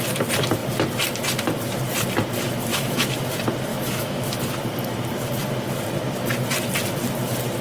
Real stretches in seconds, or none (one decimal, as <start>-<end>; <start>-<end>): 0.0-2.7; 3.3-3.7; 4.4-7.6

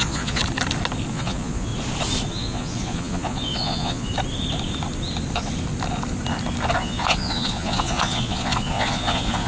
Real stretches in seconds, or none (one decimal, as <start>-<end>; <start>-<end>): 0.4-1.1; 1.7-2.3; 4.1-6.8

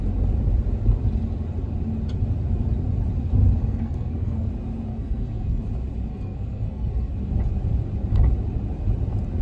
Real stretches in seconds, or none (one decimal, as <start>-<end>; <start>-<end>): 0.0-3.6; 4.5-4.9; 5.6-6.1; 7.1-9.4

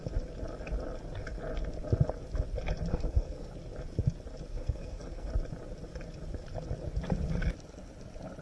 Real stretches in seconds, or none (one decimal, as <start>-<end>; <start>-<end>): 0.0-2.9; 3.5-4.5; 5.3-8.4

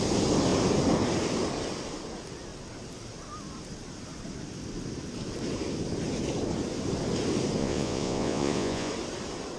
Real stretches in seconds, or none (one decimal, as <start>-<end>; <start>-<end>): 0.0-7.6; 8.9-9.6

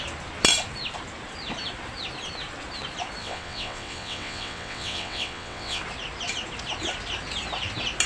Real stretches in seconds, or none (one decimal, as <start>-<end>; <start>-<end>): 0.0-3.2; 5.8-8.1

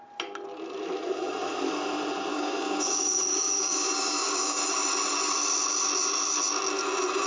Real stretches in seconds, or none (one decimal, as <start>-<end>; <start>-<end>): 0.0-2.3; 4.6-7.3

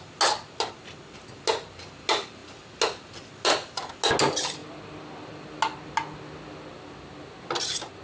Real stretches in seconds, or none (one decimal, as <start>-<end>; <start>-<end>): 0.0-8.0